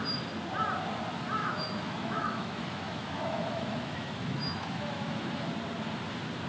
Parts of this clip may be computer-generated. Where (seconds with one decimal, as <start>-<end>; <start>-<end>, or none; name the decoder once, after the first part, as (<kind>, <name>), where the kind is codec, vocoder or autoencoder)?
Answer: 1.4-5.3 (autoencoder, DAC-VAE)